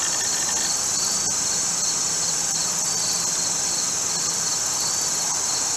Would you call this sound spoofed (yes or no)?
no